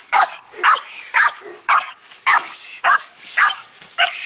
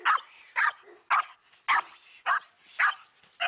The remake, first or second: first